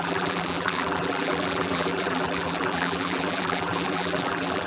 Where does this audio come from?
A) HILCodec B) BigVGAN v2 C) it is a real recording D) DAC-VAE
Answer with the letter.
B